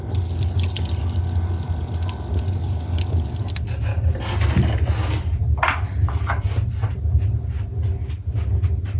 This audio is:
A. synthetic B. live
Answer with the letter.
B